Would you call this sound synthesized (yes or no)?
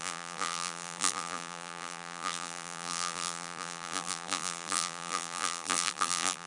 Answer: yes